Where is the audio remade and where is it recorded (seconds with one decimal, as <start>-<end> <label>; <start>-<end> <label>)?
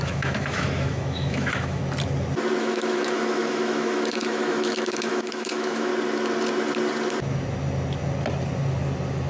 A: 0.0-1.8 remade; 1.8-2.6 recorded; 2.6-5.9 remade; 5.9-9.3 recorded